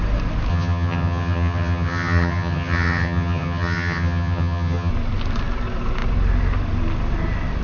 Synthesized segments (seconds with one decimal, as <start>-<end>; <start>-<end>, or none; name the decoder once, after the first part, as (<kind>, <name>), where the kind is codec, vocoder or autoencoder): 0.5-4.9 (vocoder, HiFi-GAN)